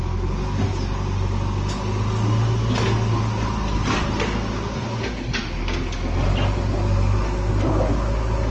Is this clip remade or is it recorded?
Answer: recorded